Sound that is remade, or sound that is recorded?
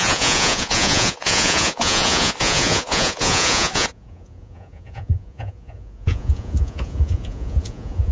remade